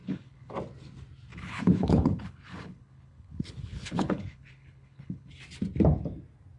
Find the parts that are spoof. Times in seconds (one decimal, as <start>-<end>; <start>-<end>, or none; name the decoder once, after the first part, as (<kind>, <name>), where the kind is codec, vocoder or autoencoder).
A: 0.0-0.5 (codec, HILCodec); 1.3-5.3

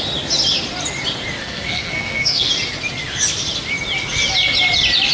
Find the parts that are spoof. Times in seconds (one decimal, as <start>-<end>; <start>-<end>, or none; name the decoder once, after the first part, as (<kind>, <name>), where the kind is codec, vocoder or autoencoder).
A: 1.4-2.5 (codec, SNAC)

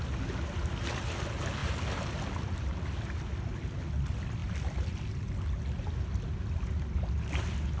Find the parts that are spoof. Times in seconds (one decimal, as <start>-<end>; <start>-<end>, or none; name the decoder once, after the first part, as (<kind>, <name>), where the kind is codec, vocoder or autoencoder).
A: none

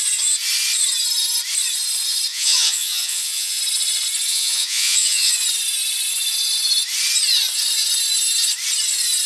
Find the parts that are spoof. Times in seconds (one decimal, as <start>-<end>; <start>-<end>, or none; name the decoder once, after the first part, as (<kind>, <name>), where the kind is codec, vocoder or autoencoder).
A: 2.3-3.6 (vocoder, Vocos); 4.3-5.3